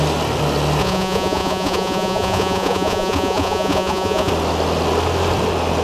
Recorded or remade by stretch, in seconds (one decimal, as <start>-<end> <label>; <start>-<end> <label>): 0.0-0.8 recorded; 0.8-4.3 remade; 4.3-5.8 recorded